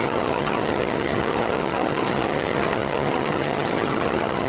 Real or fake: fake